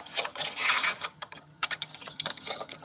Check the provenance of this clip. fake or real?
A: fake